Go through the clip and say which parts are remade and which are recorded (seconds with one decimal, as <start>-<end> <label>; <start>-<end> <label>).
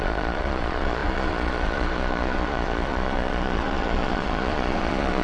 0.0-5.2 remade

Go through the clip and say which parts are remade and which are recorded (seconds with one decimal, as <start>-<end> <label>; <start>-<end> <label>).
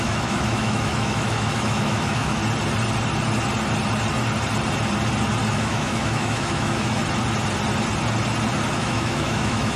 0.0-2.4 remade; 2.4-5.5 recorded; 5.5-7.0 remade; 7.0-8.7 recorded; 8.7-9.8 remade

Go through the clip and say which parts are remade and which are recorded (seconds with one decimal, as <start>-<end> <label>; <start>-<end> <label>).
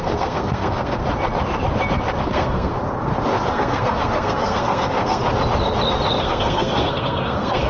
0.0-1.0 remade; 1.0-2.2 recorded; 2.2-2.7 remade; 2.7-3.5 recorded; 3.5-5.2 remade; 5.2-6.2 recorded; 6.2-7.7 remade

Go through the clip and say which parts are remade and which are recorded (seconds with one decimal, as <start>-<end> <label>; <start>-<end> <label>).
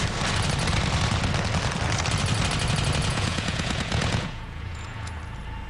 0.0-3.0 recorded; 3.0-5.2 remade; 5.2-5.7 recorded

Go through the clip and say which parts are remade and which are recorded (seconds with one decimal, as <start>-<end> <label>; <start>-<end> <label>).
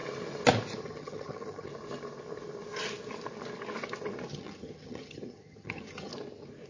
0.0-0.8 recorded; 0.8-1.7 remade; 1.7-4.3 recorded; 4.3-6.1 remade; 6.1-6.7 recorded